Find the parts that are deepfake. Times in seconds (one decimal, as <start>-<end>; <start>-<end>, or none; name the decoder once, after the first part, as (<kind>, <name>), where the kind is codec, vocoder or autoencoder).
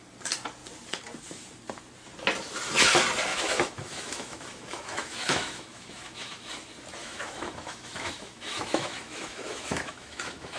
3.3-6.5 (autoencoder, DAC-VAE); 7.0-10.6